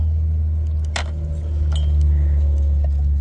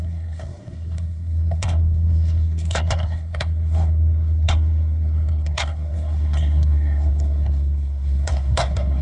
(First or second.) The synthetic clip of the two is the second